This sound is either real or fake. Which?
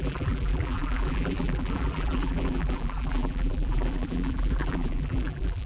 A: fake